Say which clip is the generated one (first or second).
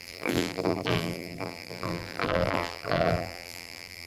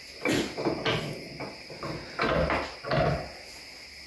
first